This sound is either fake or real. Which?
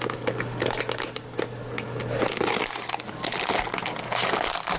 real